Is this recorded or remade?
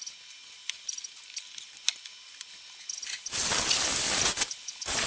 recorded